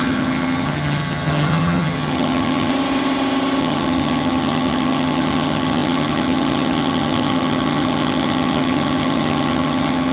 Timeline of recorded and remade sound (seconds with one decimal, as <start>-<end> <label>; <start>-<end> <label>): 0.0-2.7 remade; 2.7-3.6 recorded; 3.6-10.1 remade